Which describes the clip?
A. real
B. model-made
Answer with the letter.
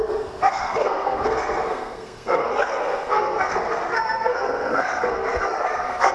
B